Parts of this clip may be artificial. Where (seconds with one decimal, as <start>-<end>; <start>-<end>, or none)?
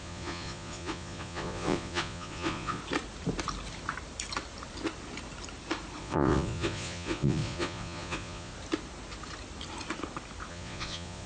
0.0-2.8; 6.0-8.5; 10.5-11.3